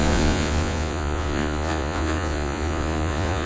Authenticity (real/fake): fake